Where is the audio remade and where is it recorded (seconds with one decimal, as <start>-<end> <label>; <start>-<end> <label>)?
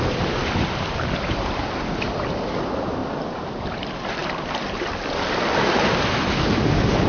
0.0-7.1 recorded